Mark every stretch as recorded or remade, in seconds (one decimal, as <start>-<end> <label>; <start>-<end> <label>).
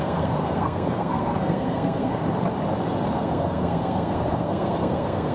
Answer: 0.0-2.2 remade; 2.2-3.1 recorded; 3.1-5.3 remade